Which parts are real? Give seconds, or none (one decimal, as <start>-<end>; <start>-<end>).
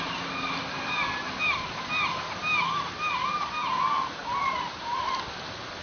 0.0-5.8